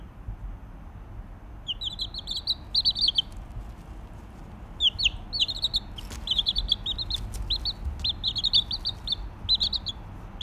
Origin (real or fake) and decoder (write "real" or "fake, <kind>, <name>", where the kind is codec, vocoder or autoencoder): real